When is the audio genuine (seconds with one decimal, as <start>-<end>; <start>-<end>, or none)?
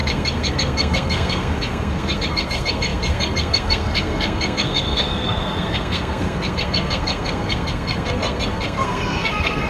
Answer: none